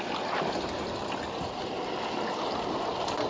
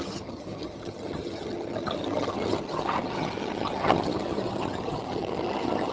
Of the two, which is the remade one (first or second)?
second